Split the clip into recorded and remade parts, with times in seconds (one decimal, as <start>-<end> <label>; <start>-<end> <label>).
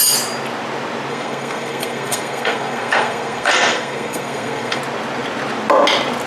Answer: 0.0-1.1 recorded; 1.1-4.8 remade; 4.8-6.3 recorded